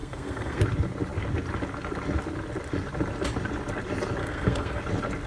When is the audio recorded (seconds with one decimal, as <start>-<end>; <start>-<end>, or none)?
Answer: 0.6-4.2; 4.8-5.3